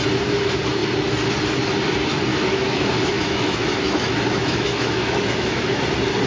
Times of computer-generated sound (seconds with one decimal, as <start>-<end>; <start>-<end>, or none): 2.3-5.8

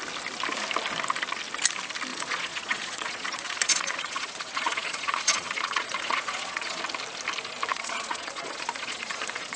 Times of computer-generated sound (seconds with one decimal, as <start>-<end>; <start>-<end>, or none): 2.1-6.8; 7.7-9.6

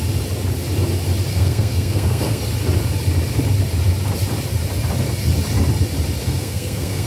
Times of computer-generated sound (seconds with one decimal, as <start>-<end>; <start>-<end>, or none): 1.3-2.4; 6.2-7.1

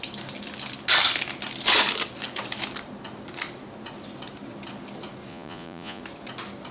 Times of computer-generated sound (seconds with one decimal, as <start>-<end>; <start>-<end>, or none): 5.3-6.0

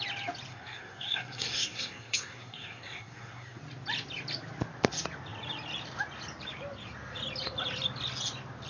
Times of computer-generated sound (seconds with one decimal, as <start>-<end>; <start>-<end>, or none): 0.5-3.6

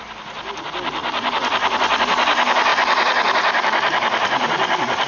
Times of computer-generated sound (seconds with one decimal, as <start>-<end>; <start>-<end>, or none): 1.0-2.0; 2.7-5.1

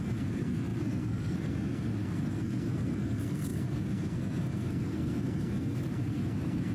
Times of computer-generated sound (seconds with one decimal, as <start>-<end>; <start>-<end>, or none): 0.0-6.7

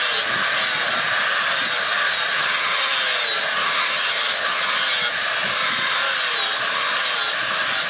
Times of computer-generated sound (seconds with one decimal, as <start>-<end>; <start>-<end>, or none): 2.3-2.9; 3.6-4.7